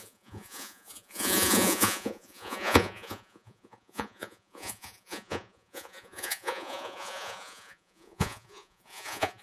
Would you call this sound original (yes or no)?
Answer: no